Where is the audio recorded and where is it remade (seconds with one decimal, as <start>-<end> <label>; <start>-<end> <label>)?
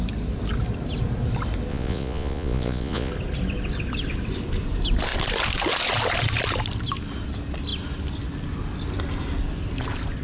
0.0-1.7 recorded; 1.7-3.1 remade; 3.1-10.2 recorded